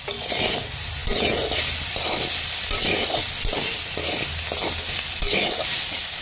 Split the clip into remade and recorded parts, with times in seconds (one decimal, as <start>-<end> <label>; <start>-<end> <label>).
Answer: 0.0-6.2 recorded